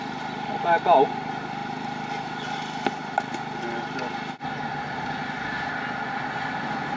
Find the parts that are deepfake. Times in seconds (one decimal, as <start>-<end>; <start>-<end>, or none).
1.6-2.1